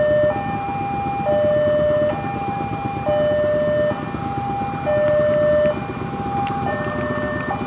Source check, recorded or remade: recorded